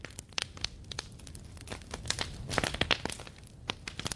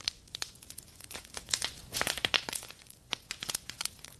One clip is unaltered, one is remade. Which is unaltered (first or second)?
first